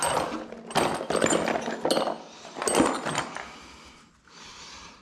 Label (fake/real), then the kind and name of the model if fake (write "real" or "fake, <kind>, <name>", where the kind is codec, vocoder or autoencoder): real